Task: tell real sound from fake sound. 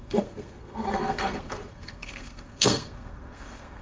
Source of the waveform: fake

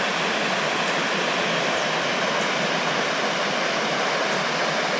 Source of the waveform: real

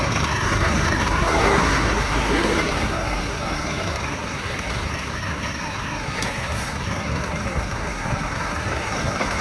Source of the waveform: fake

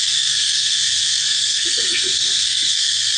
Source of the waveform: fake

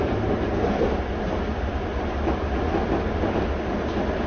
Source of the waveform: real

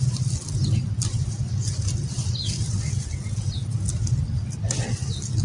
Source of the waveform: real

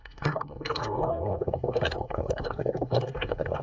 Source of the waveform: fake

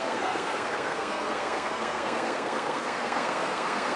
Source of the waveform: fake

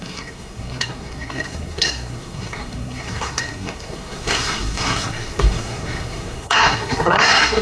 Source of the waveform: fake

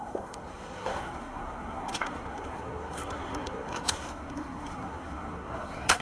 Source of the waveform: fake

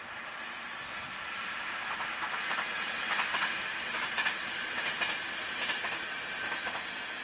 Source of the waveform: real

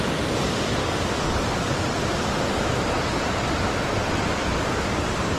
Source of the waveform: real